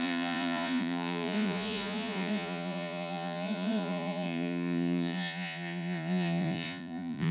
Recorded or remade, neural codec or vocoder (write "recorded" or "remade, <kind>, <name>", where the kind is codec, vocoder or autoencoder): remade, vocoder, Vocos